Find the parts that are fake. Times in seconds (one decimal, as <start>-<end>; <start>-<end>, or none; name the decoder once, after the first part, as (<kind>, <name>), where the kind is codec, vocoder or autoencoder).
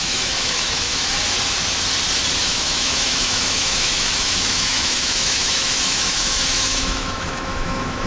0.0-0.9 (autoencoder, DAC-VAE); 2.4-8.1